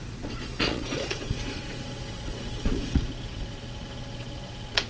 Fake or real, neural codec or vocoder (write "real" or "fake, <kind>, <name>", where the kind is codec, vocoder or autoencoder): fake, vocoder, Vocos